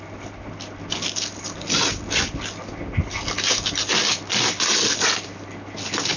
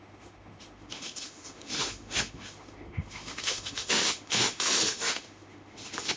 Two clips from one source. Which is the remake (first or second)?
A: second